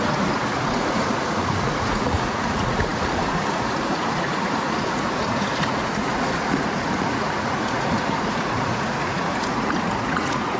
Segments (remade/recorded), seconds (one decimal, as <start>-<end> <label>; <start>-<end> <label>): 0.0-10.6 remade